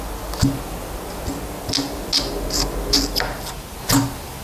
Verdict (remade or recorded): recorded